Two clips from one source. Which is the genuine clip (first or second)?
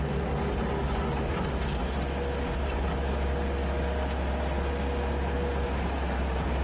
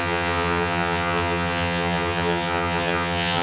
first